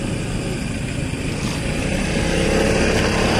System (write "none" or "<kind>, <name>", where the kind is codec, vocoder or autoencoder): vocoder, BigVGAN v2